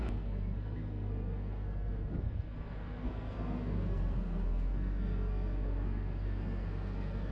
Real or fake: fake